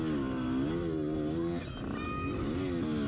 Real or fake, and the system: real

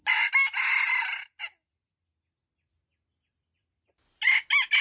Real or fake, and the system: real